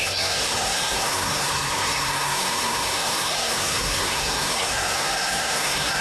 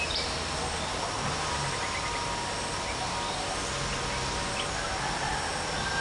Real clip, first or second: second